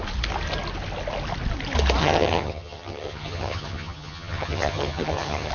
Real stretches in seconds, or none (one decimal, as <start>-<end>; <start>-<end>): 0.0-2.0